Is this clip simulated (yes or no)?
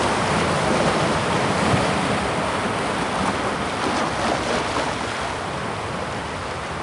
no